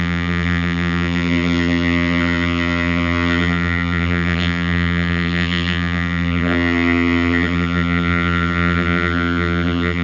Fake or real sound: fake